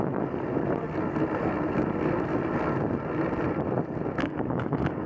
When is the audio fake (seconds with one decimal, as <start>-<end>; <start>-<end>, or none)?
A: 4.2-5.1